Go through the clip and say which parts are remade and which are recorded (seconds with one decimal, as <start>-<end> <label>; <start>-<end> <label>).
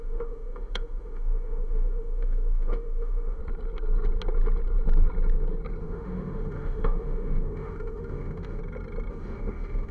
0.0-3.4 remade; 3.4-5.8 recorded; 5.8-8.6 remade; 8.6-9.1 recorded; 9.1-9.9 remade